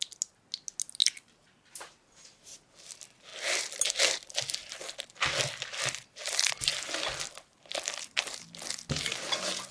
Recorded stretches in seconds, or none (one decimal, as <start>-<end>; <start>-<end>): 0.0-1.0; 2.9-6.2; 6.9-9.7

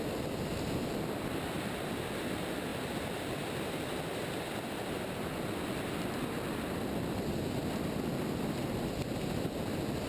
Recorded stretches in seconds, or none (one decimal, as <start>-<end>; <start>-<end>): 0.0-2.7; 5.2-10.1